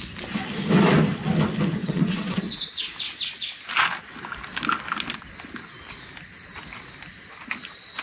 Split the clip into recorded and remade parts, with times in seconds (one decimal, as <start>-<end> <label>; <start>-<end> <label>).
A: 0.0-1.8 recorded; 1.8-2.4 remade; 2.4-8.0 recorded